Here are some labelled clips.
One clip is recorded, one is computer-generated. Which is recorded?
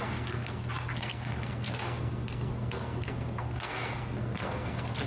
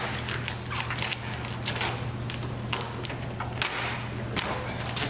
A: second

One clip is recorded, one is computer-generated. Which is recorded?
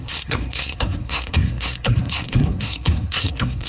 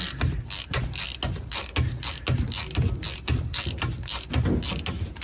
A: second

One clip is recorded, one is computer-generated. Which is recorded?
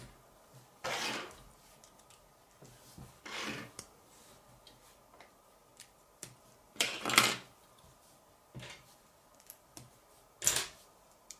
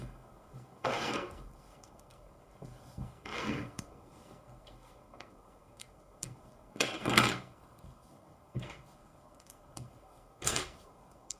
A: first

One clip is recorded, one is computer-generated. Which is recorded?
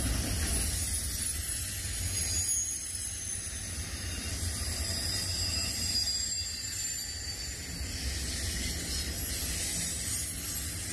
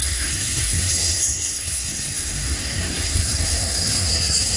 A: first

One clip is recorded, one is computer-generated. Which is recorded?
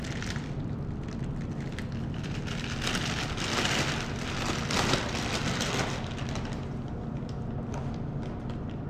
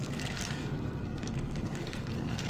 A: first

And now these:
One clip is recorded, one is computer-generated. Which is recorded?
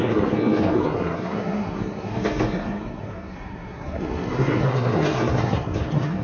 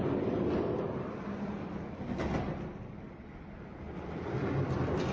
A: second